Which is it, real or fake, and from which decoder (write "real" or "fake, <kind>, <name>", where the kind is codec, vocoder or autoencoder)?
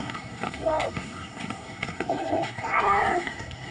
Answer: fake, codec, SNAC